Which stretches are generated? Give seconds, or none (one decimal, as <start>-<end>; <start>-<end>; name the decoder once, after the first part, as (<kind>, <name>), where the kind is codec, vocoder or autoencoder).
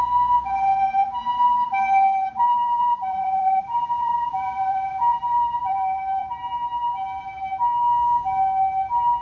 0.7-1.2 (vocoder, BigVGAN v2); 2.2-6.3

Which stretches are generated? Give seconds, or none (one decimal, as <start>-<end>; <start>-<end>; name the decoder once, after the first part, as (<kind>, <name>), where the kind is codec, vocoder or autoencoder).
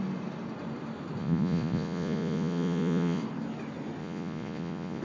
1.2-3.2 (vocoder, Vocos); 4.0-5.0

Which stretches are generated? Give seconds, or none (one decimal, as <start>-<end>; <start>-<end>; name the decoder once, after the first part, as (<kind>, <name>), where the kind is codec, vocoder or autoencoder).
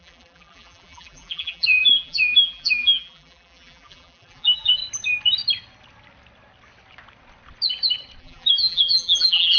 0.0-4.8 (vocoder, BigVGAN v2); 8.2-9.6